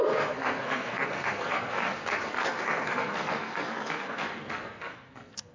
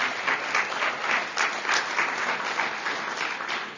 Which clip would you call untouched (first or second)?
second